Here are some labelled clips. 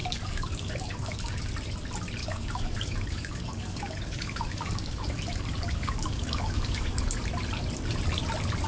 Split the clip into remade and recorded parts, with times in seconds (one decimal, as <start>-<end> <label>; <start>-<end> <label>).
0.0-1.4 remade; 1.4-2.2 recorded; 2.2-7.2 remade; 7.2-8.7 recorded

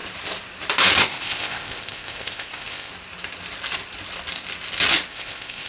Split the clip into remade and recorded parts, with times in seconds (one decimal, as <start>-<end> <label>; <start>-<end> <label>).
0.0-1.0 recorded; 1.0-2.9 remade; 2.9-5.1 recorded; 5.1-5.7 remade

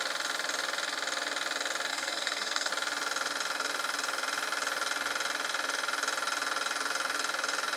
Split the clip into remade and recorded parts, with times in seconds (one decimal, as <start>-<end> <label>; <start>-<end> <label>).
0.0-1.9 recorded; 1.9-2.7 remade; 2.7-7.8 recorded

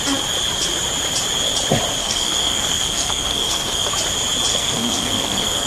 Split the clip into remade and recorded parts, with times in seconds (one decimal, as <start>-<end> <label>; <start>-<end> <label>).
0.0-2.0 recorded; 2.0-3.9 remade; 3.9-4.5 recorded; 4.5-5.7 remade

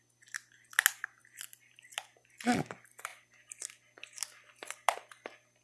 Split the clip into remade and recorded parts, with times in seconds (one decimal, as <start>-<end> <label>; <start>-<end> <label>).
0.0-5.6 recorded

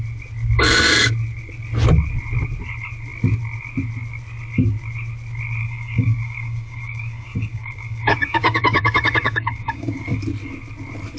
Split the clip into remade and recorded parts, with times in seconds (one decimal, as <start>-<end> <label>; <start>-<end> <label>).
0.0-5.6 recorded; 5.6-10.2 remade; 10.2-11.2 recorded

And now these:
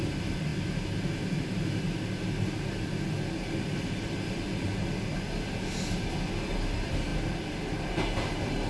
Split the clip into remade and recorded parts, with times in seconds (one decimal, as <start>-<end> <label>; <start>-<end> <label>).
0.0-8.7 recorded